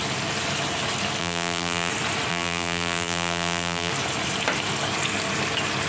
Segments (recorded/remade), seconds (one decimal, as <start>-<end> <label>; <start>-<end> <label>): 0.0-1.2 recorded; 1.2-1.9 remade; 1.9-2.3 recorded; 2.3-3.9 remade; 3.9-5.9 recorded